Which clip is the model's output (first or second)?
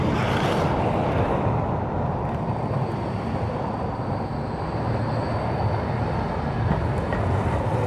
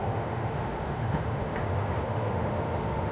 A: second